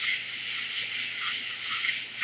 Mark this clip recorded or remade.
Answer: recorded